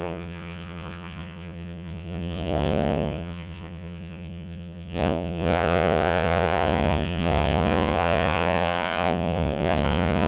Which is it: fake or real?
fake